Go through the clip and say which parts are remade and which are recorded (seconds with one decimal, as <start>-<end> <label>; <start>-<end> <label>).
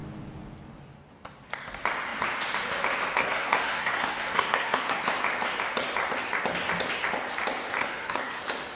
0.0-3.2 recorded; 3.2-5.0 remade; 5.0-7.8 recorded; 7.8-8.4 remade; 8.4-8.8 recorded